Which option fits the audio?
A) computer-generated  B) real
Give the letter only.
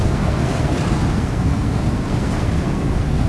A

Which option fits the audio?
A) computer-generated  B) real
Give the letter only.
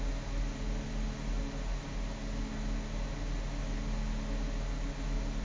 B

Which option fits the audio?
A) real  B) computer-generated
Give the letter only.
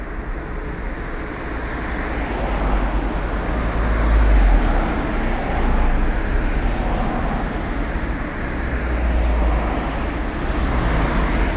A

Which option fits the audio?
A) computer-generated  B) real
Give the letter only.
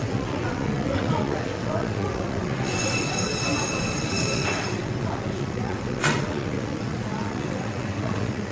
A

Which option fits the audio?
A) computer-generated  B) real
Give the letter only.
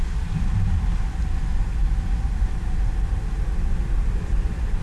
B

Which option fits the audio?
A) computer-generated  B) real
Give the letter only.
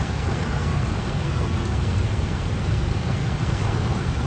A